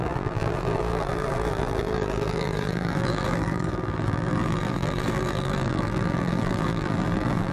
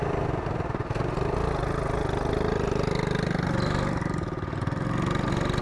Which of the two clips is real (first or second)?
second